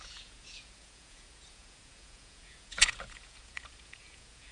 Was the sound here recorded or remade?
remade